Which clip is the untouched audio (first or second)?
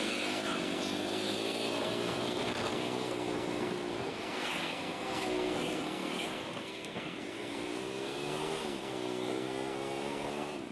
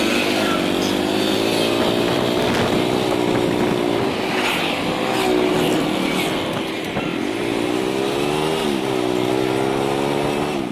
second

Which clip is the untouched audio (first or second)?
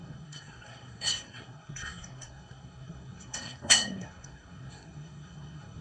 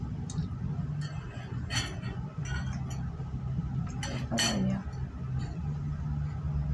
second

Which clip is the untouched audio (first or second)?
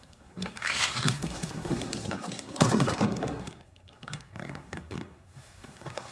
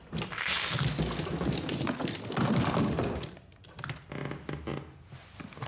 second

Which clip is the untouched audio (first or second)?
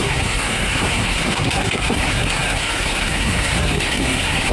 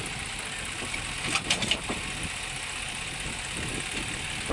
second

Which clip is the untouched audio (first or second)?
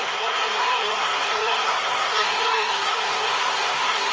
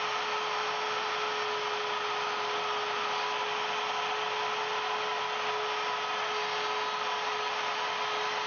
second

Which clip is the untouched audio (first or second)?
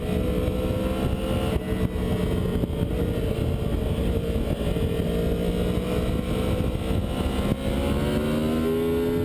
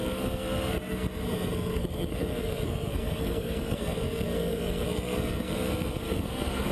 first